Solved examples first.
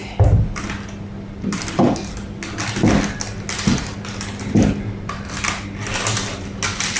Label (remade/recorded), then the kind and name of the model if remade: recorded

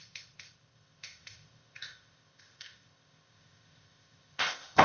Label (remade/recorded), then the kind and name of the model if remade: remade, codec, ZipCodec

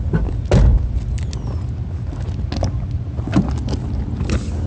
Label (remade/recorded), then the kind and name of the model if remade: recorded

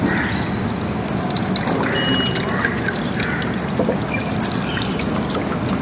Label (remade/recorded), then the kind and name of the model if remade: recorded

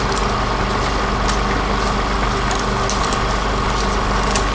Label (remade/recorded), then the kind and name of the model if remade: recorded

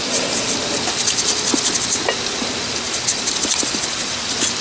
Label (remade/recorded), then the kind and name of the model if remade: recorded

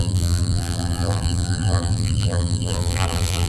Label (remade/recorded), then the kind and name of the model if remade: remade, vocoder, BigVGAN v2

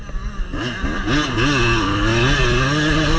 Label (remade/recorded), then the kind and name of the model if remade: recorded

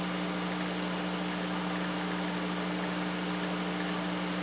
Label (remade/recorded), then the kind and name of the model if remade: recorded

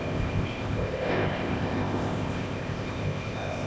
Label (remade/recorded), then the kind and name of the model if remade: remade, codec, ZipCodec